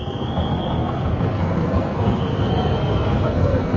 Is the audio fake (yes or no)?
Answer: yes